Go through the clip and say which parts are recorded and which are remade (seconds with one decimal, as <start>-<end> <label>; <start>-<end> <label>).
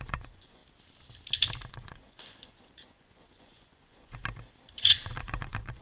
0.0-0.6 remade; 0.6-1.7 recorded; 1.7-4.2 remade; 4.2-4.7 recorded; 4.7-5.8 remade